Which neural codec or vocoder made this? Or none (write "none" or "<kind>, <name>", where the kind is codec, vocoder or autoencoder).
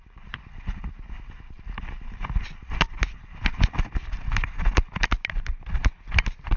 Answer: none